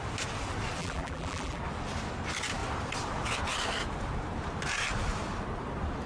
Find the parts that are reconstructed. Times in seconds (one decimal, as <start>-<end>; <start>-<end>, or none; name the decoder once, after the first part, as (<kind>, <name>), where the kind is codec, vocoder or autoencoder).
0.8-1.6 (vocoder, BigVGAN v2)